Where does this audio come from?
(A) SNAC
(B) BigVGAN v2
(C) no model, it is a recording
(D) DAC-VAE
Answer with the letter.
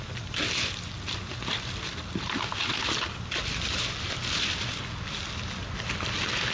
C